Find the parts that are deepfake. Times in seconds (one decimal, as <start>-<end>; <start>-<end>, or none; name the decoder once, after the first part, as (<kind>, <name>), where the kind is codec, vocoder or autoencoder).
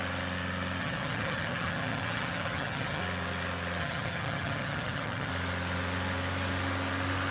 0.8-3.0 (vocoder, HiFi-GAN); 3.8-5.3